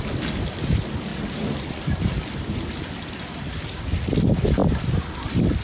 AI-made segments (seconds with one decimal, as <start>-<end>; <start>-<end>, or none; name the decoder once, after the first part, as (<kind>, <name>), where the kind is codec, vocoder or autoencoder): 0.0-5.6 (vocoder, BigVGAN v2)